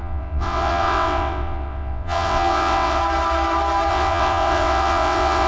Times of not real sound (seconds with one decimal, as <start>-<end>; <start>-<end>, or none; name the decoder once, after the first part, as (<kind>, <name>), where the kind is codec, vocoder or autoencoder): 0.0-3.0 (vocoder, WaveNeXt); 3.9-5.5